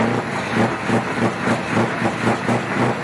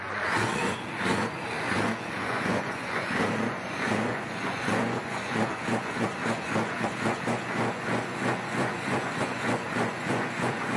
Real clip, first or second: first